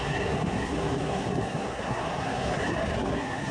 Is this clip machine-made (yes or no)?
yes